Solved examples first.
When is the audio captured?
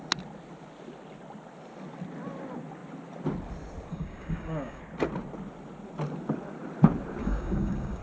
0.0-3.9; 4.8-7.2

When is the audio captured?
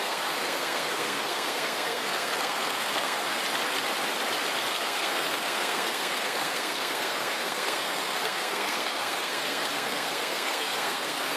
3.4-4.7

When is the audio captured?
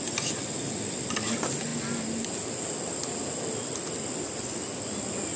0.0-5.4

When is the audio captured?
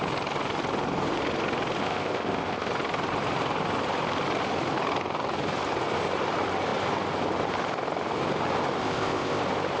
0.0-1.8; 2.7-8.8; 9.4-9.8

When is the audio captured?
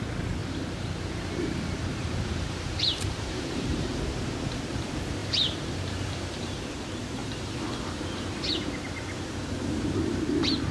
0.0-0.4; 4.0-5.2; 6.6-7.2; 8.8-10.7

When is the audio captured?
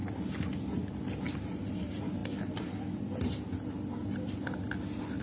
0.0-5.2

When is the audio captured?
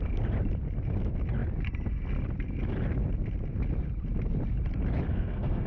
0.0-5.1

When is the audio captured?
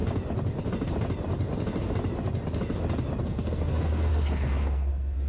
0.0-3.2